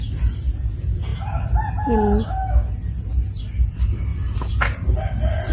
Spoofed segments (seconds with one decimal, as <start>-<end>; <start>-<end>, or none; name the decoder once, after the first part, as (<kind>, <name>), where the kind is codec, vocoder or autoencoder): none